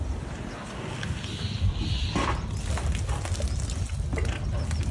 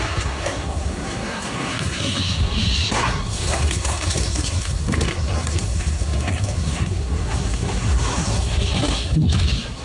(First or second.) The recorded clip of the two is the first